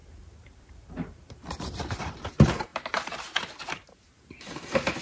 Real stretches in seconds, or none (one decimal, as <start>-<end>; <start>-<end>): none